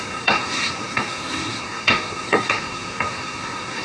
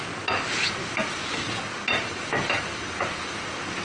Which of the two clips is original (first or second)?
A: second